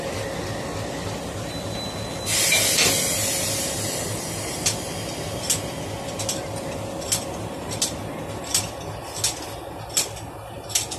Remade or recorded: recorded